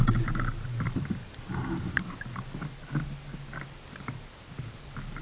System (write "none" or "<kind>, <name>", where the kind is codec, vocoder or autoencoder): none